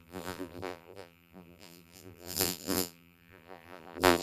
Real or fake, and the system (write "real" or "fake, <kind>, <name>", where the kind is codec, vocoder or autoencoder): fake, vocoder, BigVGAN v2